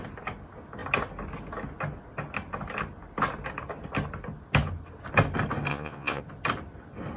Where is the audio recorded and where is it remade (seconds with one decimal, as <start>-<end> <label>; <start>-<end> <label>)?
0.0-5.7 recorded; 5.7-6.2 remade; 6.2-7.2 recorded